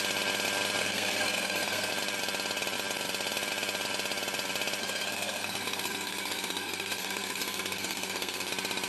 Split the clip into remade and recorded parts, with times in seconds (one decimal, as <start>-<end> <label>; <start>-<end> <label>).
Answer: 0.0-0.8 recorded; 0.8-1.9 remade; 1.9-4.8 recorded; 4.8-8.5 remade; 8.5-8.9 recorded